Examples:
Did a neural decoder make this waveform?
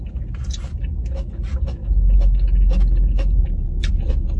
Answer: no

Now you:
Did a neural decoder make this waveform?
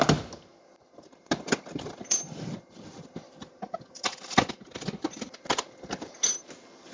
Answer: no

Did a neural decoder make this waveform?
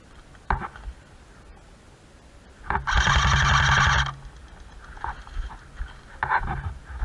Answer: no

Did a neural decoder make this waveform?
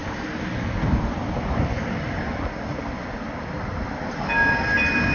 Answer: no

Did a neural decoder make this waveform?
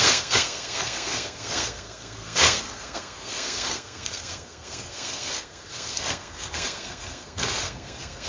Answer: yes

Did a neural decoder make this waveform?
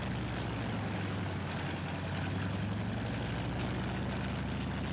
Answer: no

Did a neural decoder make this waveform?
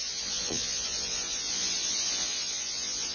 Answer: yes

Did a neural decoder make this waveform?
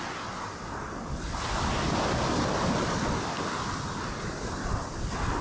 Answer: no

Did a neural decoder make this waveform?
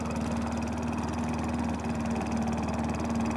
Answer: no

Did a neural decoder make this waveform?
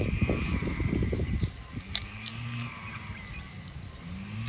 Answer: yes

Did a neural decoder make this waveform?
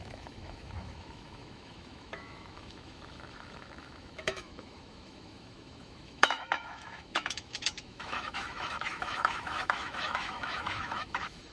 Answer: yes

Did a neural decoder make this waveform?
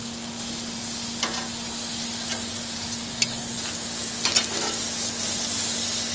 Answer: no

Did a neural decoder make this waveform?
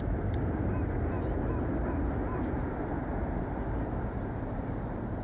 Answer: no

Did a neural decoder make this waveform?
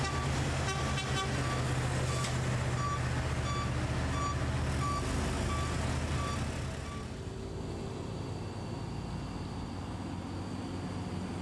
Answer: no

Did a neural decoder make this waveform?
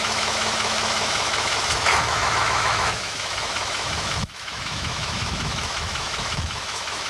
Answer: yes